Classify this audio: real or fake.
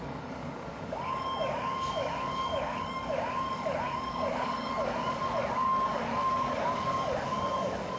fake